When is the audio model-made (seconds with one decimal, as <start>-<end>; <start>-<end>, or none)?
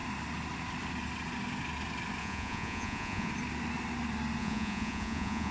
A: 2.2-3.3; 4.4-5.5